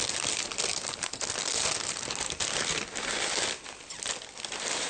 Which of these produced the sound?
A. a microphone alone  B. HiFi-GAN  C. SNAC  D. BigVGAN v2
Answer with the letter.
A